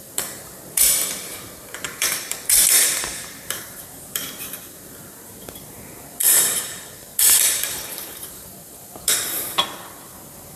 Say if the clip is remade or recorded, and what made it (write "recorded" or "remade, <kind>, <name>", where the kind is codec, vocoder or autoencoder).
remade, vocoder, BigVGAN v2